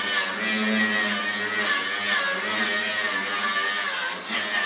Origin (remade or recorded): recorded